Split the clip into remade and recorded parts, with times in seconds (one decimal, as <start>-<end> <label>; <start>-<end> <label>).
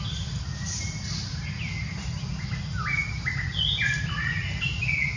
0.0-5.2 recorded